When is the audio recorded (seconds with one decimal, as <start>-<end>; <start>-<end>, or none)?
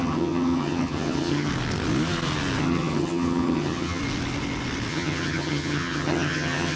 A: 1.5-2.6; 4.0-4.9